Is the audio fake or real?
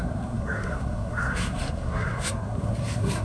fake